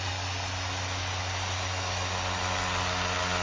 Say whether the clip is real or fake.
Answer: real